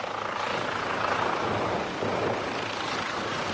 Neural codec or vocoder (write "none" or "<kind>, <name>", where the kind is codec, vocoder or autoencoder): none